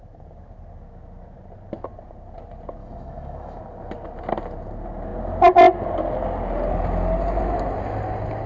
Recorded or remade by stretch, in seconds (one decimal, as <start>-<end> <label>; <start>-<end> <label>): 0.0-2.8 recorded; 2.8-3.6 remade; 3.6-8.5 recorded

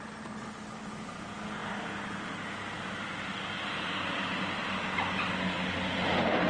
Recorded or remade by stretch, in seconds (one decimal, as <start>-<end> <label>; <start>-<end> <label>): 0.0-6.5 recorded